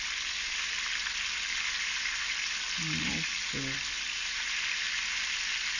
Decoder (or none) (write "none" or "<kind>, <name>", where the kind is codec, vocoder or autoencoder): none